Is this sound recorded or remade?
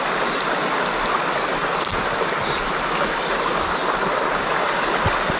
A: recorded